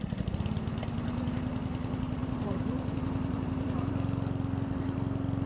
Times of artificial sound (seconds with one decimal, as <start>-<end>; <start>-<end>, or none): 2.2-3.9